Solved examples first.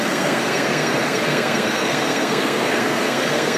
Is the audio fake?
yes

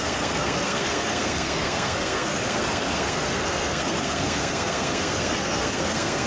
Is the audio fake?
yes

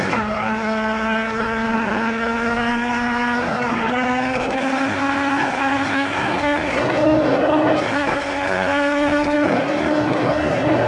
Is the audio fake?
yes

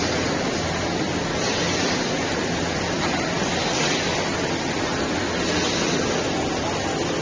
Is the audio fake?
no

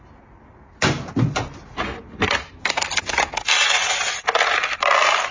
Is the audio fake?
no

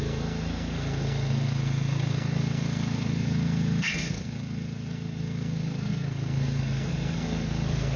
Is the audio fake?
yes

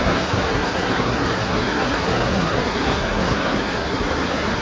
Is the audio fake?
yes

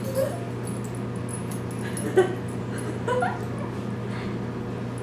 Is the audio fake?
no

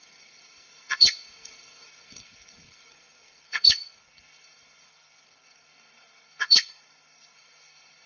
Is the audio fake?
yes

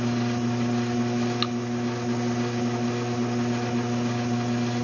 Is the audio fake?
no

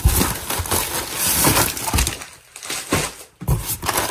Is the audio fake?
no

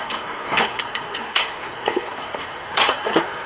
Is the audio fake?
yes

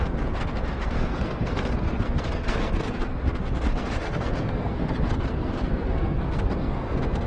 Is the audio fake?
yes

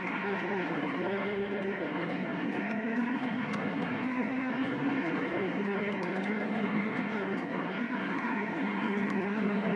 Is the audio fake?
yes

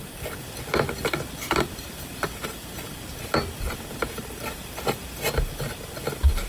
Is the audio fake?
no